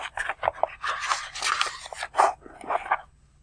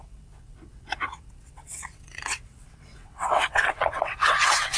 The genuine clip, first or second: first